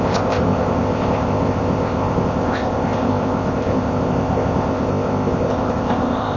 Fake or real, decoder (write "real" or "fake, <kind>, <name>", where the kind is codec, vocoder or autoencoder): fake, codec, ZipCodec